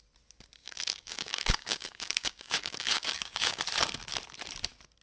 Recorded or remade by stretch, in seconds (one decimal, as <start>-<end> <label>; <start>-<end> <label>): 0.0-0.6 recorded; 0.6-3.6 remade; 3.6-5.0 recorded